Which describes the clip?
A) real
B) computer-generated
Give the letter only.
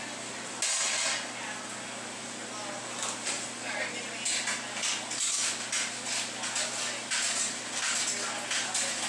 A